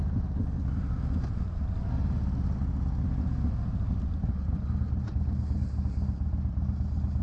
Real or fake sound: real